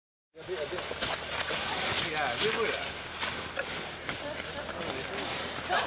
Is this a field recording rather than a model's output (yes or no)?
yes